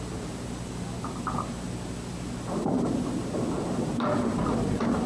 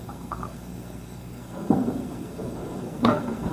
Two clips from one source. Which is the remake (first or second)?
second